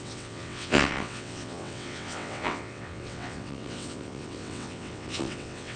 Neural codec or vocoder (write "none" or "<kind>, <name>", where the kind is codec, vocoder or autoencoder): vocoder, WaveNeXt